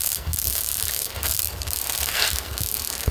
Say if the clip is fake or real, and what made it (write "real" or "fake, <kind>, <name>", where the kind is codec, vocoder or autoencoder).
fake, codec, SNAC